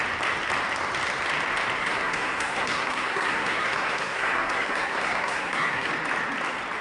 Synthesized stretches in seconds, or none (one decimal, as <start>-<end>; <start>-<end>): 1.8-5.9